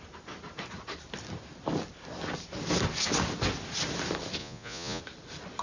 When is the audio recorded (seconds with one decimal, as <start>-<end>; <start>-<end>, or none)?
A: 0.0-4.4; 5.0-5.6